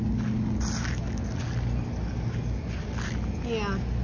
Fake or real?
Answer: real